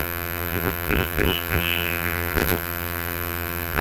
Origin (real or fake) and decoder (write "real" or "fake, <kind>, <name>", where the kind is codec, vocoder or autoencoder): fake, vocoder, BigVGAN v2